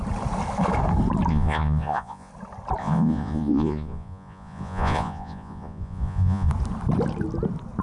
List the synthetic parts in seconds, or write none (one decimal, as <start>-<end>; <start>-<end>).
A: 1.3-2.3; 2.8-6.5